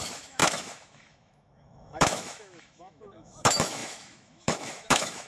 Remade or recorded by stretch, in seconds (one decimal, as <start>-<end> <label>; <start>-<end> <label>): 0.0-5.3 remade